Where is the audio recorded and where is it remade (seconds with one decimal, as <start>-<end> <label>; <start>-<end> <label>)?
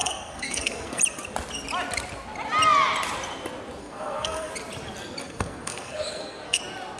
0.0-1.0 remade; 1.0-3.8 recorded; 3.8-4.5 remade; 4.5-5.2 recorded; 5.2-6.6 remade; 6.6-7.0 recorded